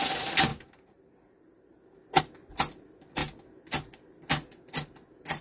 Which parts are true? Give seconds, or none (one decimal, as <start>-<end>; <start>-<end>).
0.0-5.4